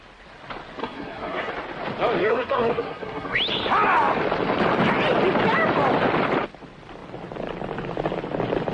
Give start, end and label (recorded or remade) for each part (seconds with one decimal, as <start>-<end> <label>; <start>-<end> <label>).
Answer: 0.0-0.8 recorded; 0.8-1.5 remade; 1.5-2.2 recorded; 2.2-3.4 remade; 3.4-8.7 recorded